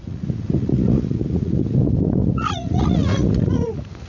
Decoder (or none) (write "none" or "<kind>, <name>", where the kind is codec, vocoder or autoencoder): vocoder, Vocos